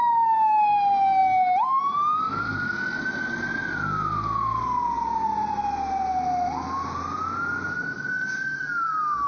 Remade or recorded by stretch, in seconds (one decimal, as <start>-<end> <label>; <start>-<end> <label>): 0.0-9.3 recorded